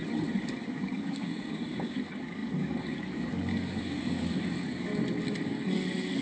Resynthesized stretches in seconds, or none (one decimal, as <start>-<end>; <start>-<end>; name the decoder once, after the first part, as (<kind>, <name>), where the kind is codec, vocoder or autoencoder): 0.7-4.9 (codec, DAC); 5.4-6.2